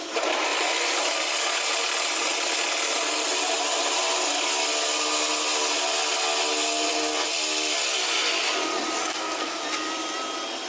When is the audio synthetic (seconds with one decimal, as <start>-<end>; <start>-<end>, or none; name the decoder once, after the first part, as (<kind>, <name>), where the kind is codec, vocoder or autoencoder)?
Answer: 9.0-9.6 (codec, SNAC)